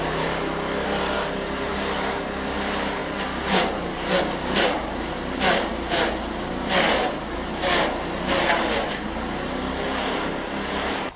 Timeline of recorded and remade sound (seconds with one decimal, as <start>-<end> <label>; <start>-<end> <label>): 0.0-11.2 remade